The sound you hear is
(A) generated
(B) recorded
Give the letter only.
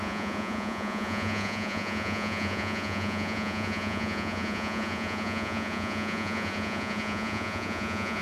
A